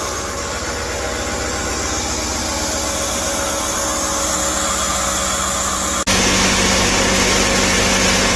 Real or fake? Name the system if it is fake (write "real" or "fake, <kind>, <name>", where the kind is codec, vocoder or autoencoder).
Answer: real